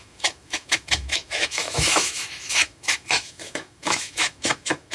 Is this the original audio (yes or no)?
no